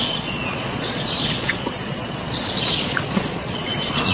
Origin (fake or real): fake